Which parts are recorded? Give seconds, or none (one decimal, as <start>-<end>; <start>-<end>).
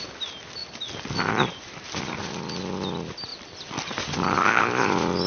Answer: 0.0-0.6; 2.0-3.3; 4.6-5.3